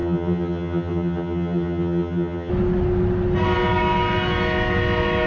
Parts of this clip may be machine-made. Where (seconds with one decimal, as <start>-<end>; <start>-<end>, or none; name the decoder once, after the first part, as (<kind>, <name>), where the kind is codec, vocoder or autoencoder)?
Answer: 0.0-2.5 (vocoder, HiFi-GAN)